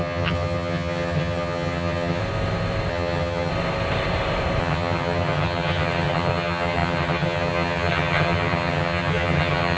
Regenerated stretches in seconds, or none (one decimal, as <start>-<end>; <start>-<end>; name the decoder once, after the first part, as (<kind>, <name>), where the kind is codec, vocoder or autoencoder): 0.0-2.2 (vocoder, HiFi-GAN); 2.9-3.5; 4.6-9.8